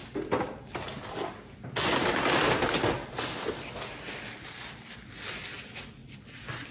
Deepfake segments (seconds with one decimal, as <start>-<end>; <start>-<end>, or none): none